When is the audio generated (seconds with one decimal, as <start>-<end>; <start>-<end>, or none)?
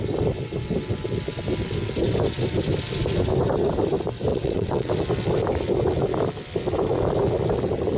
4.3-4.9